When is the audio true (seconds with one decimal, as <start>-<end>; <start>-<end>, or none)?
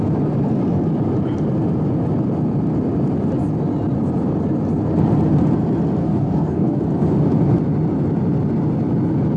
0.0-6.0; 6.8-9.4